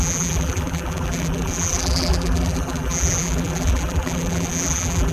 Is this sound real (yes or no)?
no